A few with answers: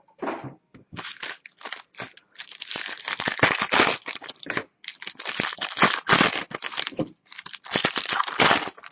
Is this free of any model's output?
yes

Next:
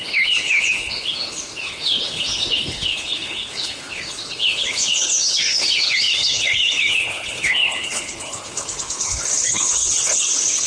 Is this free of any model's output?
no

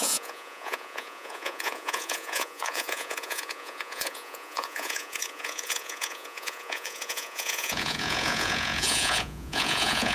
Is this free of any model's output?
no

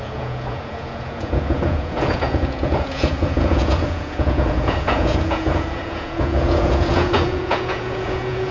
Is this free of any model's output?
no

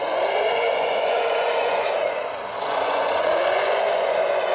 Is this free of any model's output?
no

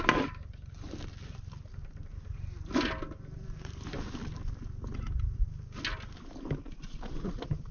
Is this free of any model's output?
yes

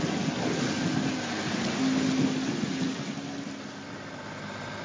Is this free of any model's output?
yes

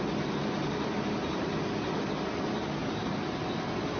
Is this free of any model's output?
yes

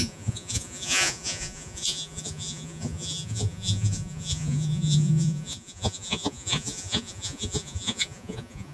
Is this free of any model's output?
no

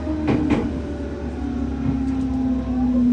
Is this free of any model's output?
yes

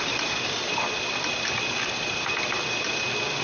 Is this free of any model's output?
yes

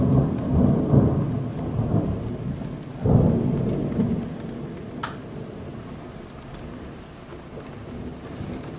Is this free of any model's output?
yes